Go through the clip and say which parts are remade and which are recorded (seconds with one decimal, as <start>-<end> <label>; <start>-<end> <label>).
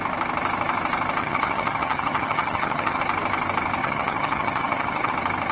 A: 0.0-1.2 recorded; 1.2-3.0 remade; 3.0-3.8 recorded; 3.8-5.1 remade; 5.1-5.5 recorded